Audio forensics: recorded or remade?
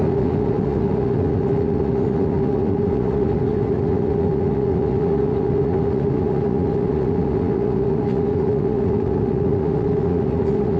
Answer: remade